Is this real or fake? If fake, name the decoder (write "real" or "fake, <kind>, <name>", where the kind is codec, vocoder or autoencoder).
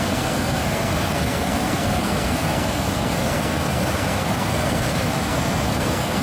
fake, codec, SNAC